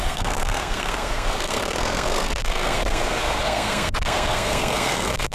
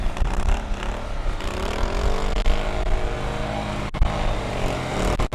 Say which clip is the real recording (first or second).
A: second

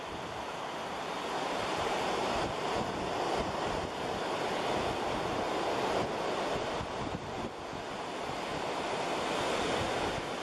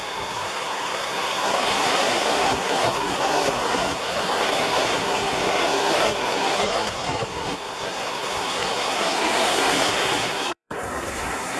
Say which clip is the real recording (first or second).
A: first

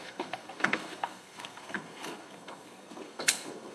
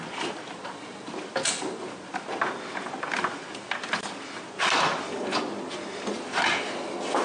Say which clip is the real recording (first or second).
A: second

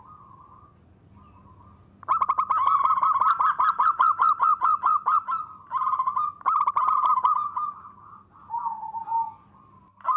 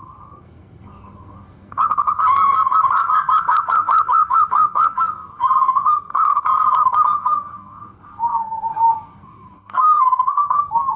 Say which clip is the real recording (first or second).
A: first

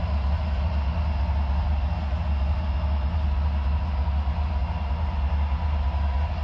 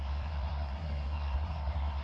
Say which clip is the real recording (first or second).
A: first